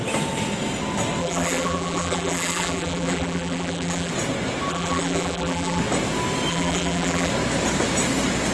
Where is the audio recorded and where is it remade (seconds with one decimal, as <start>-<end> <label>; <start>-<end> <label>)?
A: 0.0-1.2 recorded; 1.2-4.1 remade; 4.1-4.7 recorded; 4.7-5.8 remade; 5.8-6.5 recorded; 6.5-7.3 remade; 7.3-8.5 recorded